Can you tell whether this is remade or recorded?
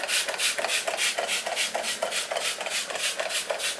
recorded